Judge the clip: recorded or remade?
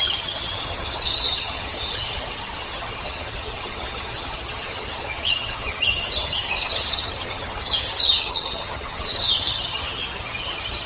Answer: remade